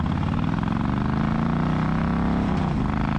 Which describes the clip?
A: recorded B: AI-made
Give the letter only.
A